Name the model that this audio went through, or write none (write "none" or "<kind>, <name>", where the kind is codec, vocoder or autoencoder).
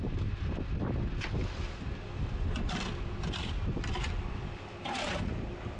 none